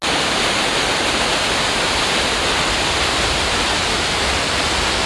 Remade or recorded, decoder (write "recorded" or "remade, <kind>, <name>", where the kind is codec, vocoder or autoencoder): recorded